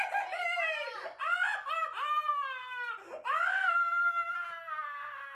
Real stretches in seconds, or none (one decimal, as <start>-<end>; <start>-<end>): 0.0-3.5; 4.3-5.3